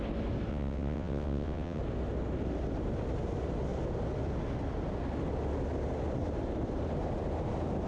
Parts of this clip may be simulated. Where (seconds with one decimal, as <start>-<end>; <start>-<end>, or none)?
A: 0.5-1.8